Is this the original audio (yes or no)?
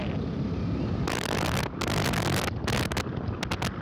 yes